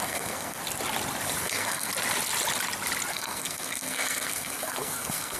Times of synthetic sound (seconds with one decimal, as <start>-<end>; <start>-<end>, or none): 0.0-0.6; 1.4-1.9; 3.1-5.4

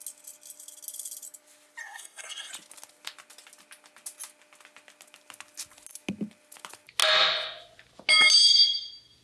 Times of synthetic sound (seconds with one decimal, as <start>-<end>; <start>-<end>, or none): 1.8-2.5

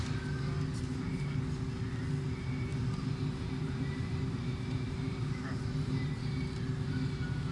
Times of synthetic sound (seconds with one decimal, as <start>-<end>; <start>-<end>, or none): 2.7-6.1

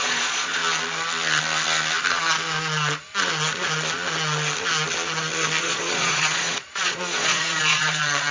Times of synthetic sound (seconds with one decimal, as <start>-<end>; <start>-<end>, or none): 0.0-0.6; 5.6-8.3

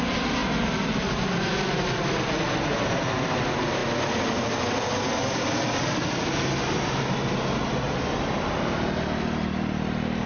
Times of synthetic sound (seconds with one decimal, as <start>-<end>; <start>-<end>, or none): none